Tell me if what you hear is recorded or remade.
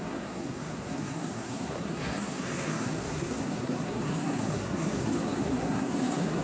remade